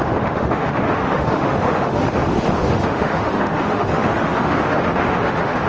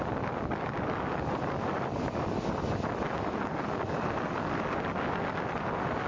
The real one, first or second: second